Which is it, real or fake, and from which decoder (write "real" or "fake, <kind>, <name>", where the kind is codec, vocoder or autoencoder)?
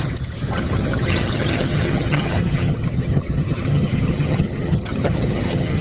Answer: fake, vocoder, HiFi-GAN